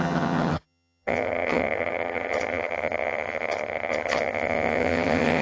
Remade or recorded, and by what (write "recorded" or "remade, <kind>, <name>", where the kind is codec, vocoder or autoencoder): remade, vocoder, HiFi-GAN